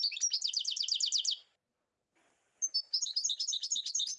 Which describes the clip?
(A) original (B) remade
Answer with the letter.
A